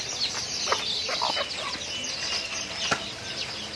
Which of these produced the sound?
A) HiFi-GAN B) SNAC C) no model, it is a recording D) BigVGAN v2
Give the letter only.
C